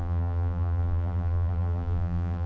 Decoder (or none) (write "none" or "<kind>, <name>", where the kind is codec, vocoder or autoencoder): vocoder, BigVGAN v2